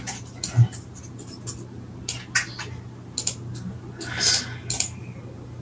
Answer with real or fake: real